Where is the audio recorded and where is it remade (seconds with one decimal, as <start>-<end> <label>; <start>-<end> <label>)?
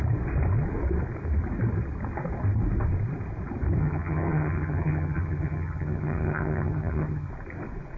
0.0-3.8 recorded; 3.8-7.3 remade; 7.3-8.0 recorded